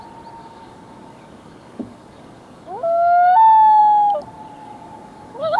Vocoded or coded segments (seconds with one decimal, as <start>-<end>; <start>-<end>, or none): 0.4-3.8; 4.6-5.6